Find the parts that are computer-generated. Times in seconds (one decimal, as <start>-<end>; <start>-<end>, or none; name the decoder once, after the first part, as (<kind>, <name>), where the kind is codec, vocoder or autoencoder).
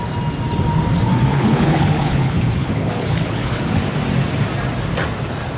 1.3-3.8 (codec, HILCodec)